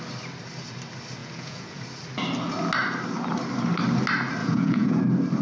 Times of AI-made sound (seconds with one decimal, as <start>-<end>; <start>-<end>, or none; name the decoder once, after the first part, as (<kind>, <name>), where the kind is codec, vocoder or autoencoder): 1.2-1.8 (vocoder, Vocos); 4.4-5.0